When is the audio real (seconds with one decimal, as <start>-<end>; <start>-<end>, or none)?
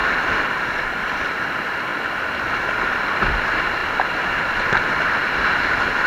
0.0-1.9; 2.6-6.1